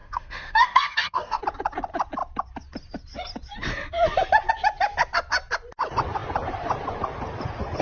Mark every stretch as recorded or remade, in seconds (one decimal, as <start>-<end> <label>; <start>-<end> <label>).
0.0-1.4 remade; 1.4-7.8 recorded